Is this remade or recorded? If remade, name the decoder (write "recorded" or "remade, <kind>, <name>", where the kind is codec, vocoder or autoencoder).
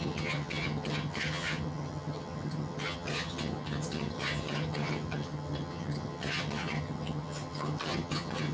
remade, vocoder, HiFi-GAN